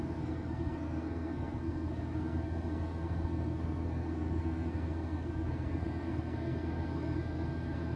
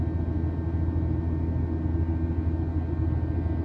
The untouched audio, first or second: second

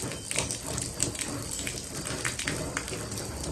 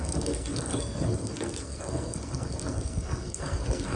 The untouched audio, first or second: first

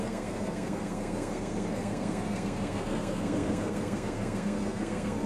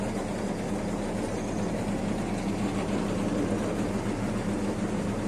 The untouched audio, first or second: second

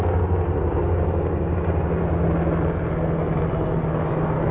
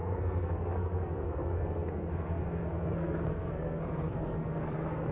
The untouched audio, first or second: first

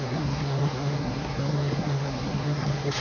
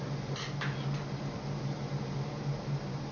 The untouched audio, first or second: second